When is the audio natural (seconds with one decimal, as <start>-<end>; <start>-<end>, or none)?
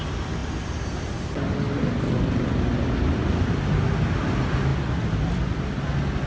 0.0-6.3